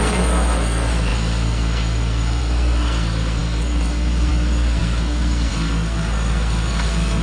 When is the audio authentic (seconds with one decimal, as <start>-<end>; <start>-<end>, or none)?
none